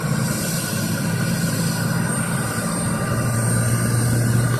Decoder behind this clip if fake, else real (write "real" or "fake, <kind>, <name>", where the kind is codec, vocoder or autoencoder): real